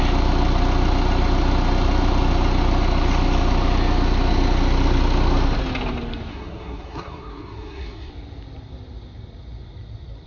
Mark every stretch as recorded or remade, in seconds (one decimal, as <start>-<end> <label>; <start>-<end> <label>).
0.0-6.3 recorded; 6.3-8.1 remade; 8.1-10.3 recorded

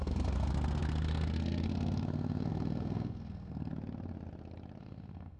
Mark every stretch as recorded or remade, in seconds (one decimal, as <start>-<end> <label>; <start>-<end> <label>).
0.0-3.7 remade; 3.7-4.8 recorded; 4.8-5.4 remade

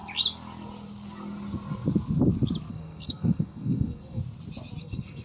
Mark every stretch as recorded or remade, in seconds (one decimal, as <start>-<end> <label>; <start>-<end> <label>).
0.0-2.7 recorded; 2.7-4.2 remade; 4.2-4.8 recorded; 4.8-5.2 remade

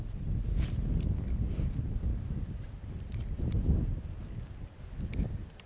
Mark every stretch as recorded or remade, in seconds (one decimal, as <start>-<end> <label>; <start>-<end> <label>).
0.0-5.7 recorded

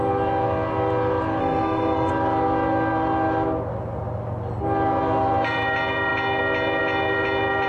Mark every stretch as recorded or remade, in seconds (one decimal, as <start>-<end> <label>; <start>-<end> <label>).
0.0-1.4 recorded; 1.4-2.1 remade; 2.1-7.7 recorded

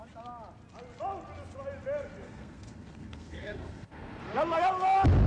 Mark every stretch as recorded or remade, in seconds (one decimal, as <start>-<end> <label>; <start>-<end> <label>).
0.0-2.2 recorded; 2.2-4.2 remade; 4.2-5.3 recorded